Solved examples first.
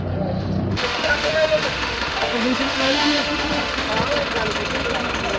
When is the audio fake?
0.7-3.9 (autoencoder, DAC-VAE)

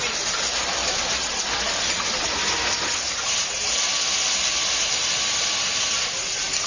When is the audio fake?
none

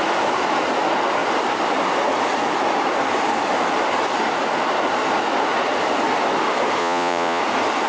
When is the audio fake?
6.8-7.4 (vocoder, Vocos)

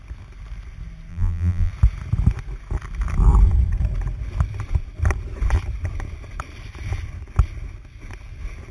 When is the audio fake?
1.1-1.7 (vocoder, BigVGAN v2)

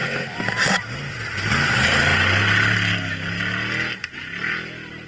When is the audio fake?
0.0-2.1 (vocoder, BigVGAN v2)

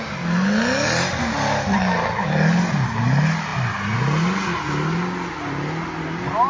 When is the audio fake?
none

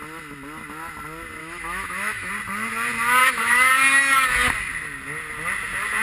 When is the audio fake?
1.4-2.3 (autoencoder, DAC-VAE); 3.2-3.7

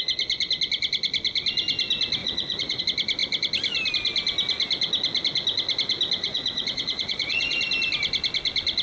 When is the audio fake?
2.2-2.8 (vocoder, Vocos); 6.2-7.6